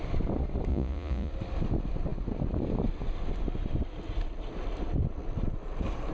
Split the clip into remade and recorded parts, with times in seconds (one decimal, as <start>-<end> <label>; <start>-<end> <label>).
0.0-0.7 recorded; 0.7-1.3 remade; 1.3-6.1 recorded